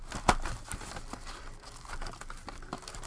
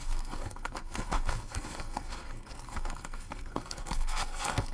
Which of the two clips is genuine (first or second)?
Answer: first